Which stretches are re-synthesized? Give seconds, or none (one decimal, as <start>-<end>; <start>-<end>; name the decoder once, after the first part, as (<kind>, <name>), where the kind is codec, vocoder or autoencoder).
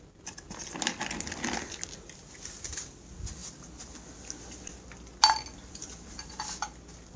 none